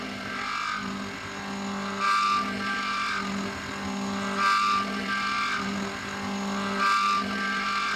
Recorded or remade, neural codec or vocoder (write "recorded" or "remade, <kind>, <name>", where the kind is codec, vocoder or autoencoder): recorded